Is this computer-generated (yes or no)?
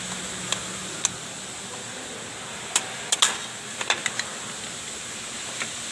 no